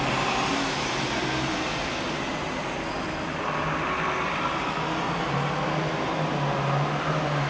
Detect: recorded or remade recorded